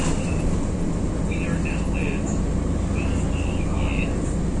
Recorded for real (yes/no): yes